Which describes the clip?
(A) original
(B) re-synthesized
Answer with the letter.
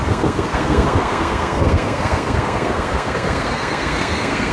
B